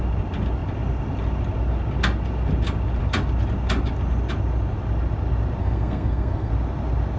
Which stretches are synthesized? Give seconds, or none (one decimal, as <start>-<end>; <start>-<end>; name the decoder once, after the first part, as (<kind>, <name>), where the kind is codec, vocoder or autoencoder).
5.6-6.5 (codec, SNAC)